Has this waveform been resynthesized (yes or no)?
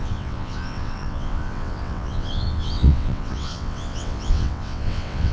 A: yes